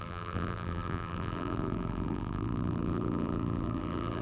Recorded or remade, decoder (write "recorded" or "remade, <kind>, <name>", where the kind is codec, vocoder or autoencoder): remade, vocoder, BigVGAN v2